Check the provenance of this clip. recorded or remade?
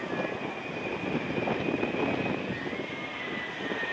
recorded